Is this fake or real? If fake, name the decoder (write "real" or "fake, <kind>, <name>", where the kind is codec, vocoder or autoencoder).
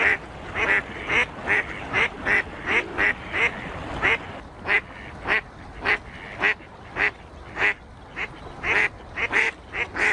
real